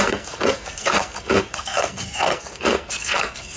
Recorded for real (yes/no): no